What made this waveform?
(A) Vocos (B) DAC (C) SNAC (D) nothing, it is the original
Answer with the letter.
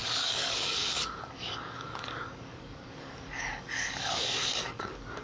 B